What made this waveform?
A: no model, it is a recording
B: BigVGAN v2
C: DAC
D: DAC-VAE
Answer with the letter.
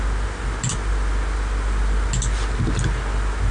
A